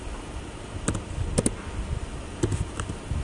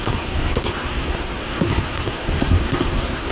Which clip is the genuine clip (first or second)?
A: first